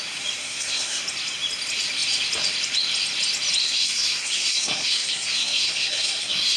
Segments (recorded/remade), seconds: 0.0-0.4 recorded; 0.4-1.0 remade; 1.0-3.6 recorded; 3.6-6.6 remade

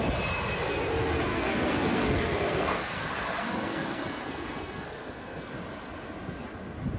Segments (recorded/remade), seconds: 0.0-1.3 recorded; 1.3-5.5 remade; 5.5-7.0 recorded

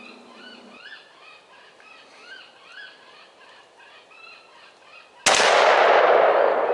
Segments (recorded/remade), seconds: 0.0-6.7 recorded

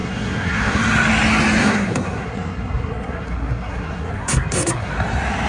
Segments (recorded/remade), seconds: 0.0-0.8 remade; 0.8-1.6 recorded; 1.6-4.9 remade; 4.9-5.5 recorded

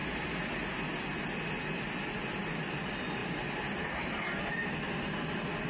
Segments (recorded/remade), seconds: 0.0-5.7 recorded

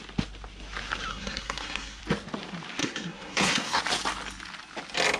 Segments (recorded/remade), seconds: 0.0-1.1 recorded; 1.1-2.0 remade; 2.0-2.8 recorded; 2.8-3.8 remade; 3.8-5.2 recorded